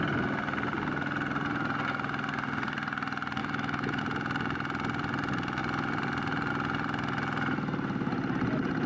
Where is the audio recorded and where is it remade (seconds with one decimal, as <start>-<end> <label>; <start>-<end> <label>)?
0.0-3.4 recorded; 3.4-4.0 remade; 4.0-8.9 recorded